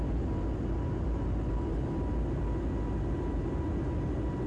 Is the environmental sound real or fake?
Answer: real